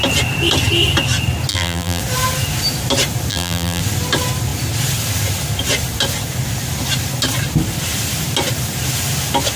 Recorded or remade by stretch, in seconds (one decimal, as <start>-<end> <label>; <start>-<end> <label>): 0.0-1.5 recorded; 1.5-2.0 remade; 2.0-3.3 recorded; 3.3-3.8 remade; 3.8-9.6 recorded